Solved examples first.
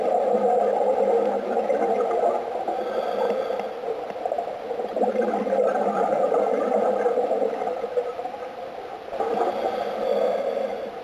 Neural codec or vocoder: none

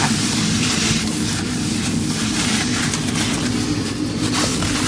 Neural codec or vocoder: none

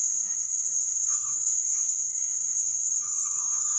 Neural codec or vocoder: codec, SNAC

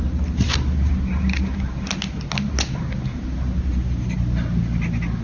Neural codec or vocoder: none